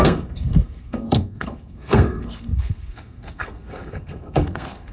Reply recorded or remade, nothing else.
remade